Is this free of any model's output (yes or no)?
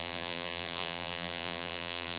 no